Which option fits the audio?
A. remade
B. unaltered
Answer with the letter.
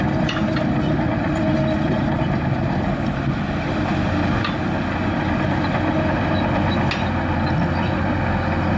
B